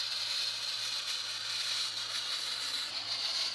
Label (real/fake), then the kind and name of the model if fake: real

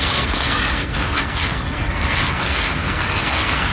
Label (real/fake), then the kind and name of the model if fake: fake, codec, SNAC